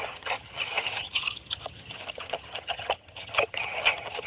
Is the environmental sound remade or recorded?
remade